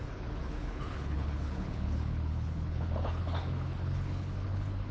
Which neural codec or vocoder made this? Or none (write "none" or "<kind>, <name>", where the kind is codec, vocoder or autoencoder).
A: codec, HILCodec